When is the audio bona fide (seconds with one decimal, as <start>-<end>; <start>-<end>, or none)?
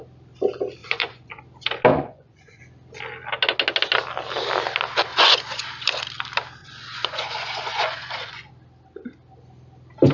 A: 0.0-0.8; 1.4-1.9; 2.6-5.1; 5.7-6.6; 8.5-10.1